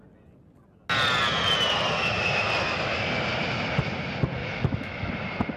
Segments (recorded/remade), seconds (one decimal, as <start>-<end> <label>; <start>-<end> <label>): 0.0-4.4 recorded; 4.4-5.1 remade; 5.1-5.6 recorded